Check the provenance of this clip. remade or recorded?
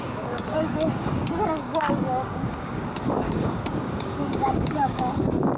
remade